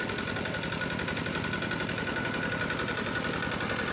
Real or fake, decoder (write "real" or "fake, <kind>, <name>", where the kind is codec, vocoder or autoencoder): real